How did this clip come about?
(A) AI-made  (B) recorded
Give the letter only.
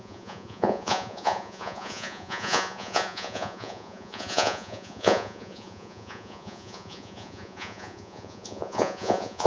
A